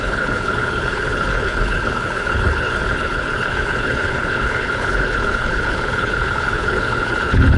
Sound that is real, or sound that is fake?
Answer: fake